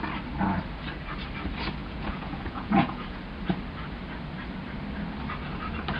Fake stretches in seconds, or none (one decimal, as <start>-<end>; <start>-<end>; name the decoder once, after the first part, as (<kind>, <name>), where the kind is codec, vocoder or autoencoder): 1.8-3.2 (vocoder, Vocos)